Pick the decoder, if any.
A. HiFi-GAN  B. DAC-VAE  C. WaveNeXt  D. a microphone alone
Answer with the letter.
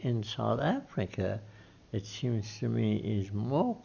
D